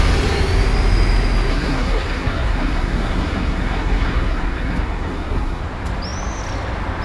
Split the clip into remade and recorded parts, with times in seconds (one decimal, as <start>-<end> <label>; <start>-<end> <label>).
0.0-1.5 recorded; 1.5-5.6 remade; 5.6-7.0 recorded